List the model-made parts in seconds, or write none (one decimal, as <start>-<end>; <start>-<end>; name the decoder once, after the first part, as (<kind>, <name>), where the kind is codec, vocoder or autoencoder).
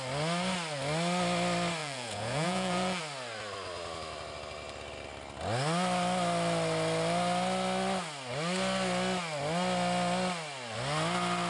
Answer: 1.8-3.0 (vocoder, Vocos)